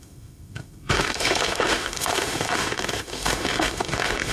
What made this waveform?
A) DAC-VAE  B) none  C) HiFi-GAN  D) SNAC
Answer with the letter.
A